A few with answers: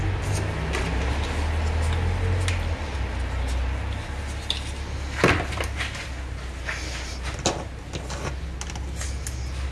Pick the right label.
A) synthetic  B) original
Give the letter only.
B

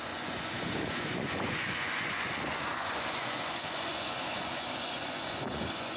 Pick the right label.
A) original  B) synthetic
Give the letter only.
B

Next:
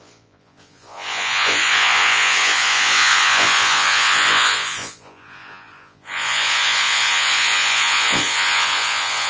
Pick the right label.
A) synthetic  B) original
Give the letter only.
A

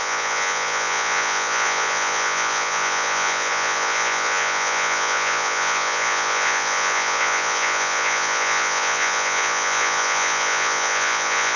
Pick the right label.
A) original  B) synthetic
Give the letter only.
B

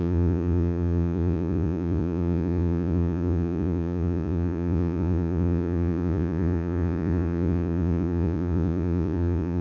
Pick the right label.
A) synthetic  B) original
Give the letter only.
A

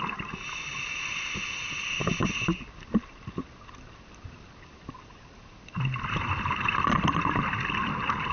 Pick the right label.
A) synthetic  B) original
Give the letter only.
B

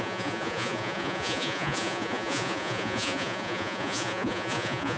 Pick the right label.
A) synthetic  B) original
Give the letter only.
A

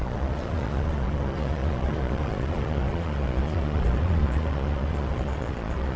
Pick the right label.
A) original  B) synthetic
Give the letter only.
B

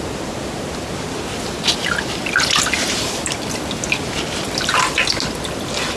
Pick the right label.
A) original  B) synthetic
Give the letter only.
A